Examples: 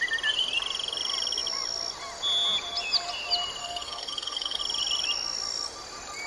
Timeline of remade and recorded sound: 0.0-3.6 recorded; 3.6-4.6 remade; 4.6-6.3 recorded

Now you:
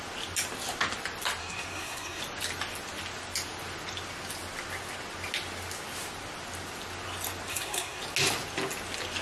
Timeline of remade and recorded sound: 0.0-1.4 recorded; 1.4-2.2 remade; 2.2-7.5 recorded; 7.5-8.0 remade; 8.0-9.2 recorded